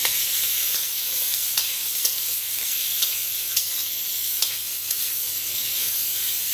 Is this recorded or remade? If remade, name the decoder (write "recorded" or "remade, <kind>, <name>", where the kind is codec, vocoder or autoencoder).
remade, codec, SNAC